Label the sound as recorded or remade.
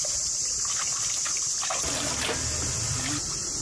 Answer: recorded